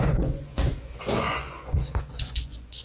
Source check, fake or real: fake